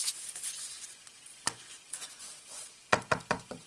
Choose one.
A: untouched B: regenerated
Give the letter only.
B